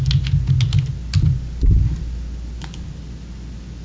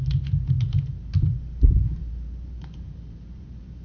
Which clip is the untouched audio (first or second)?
first